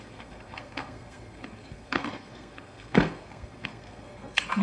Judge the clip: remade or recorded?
remade